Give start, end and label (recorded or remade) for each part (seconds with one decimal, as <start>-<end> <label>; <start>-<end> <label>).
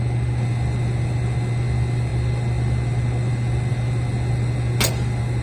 0.0-5.4 recorded